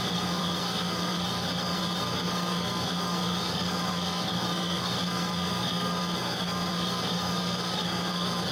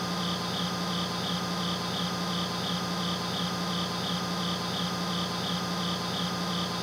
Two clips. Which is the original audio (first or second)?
second